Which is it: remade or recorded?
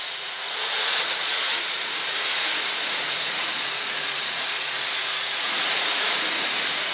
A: remade